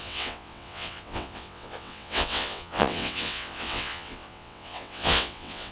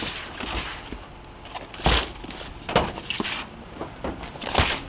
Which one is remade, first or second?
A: first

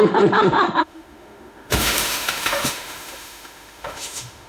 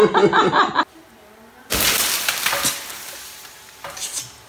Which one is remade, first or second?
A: first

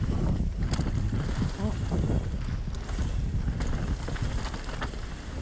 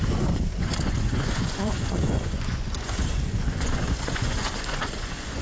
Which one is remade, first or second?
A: second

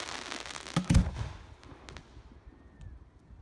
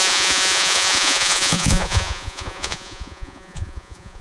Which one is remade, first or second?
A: second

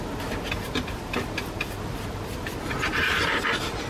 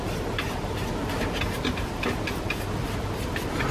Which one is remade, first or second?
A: second